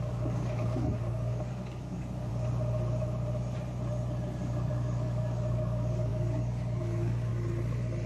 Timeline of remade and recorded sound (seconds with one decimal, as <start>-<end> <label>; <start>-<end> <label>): 0.0-2.3 remade; 2.3-4.7 recorded; 4.7-7.3 remade; 7.3-8.1 recorded